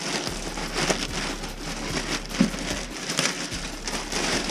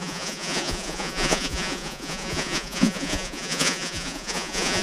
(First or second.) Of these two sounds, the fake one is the second